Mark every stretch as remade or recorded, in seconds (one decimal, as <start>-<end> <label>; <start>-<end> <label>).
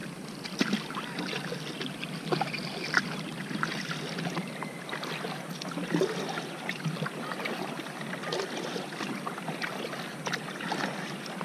0.0-11.4 recorded